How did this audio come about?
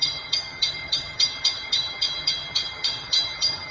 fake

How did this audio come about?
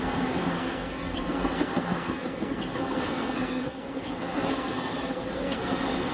fake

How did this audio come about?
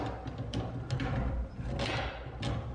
real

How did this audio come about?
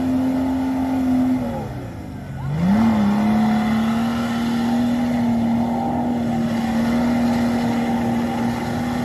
real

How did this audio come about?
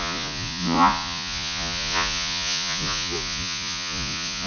fake